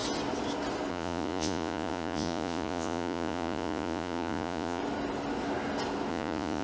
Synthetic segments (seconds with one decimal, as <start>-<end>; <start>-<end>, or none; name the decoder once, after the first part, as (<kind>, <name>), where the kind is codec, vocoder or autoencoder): 0.9-4.8 (vocoder, Vocos); 6.1-6.6